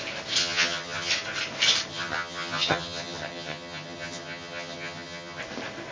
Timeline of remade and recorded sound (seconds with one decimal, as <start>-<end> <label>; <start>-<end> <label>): 0.0-0.4 recorded; 0.4-1.1 remade; 1.1-1.9 recorded; 1.9-5.4 remade; 5.4-5.9 recorded